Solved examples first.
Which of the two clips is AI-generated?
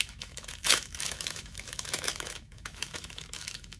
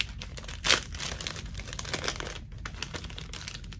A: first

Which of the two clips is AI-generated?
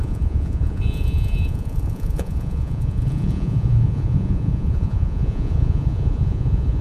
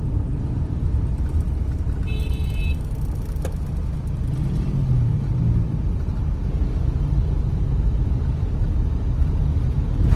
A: first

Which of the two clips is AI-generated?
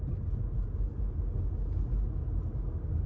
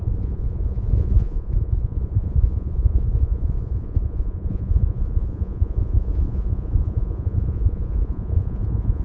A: second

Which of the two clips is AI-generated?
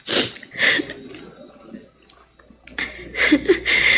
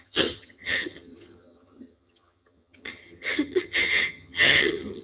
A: second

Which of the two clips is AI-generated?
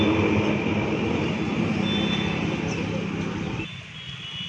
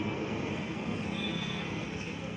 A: second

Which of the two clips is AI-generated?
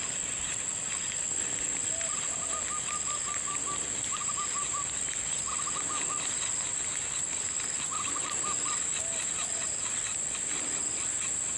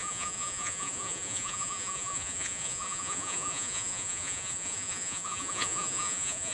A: second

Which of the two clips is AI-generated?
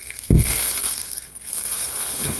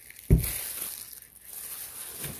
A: first